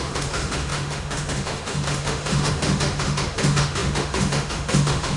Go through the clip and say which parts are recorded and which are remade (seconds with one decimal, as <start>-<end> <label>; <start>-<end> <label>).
0.0-5.2 remade